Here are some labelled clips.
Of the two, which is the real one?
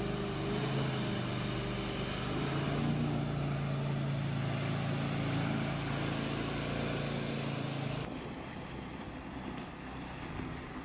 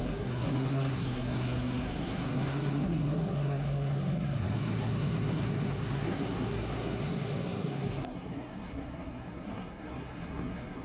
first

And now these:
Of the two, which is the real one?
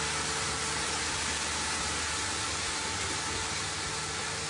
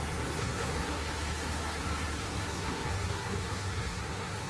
first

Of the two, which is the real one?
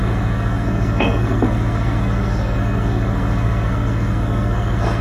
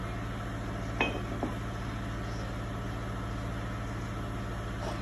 second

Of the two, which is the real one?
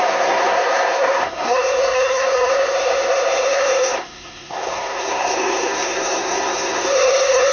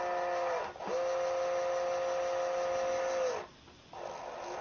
second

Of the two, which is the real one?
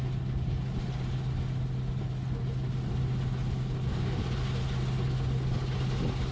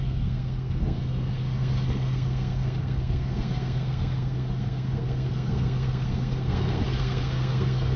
first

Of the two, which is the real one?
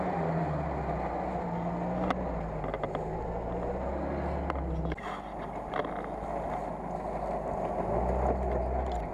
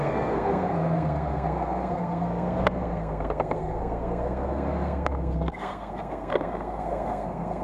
first